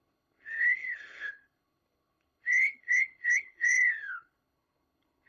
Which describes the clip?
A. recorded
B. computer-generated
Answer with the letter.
B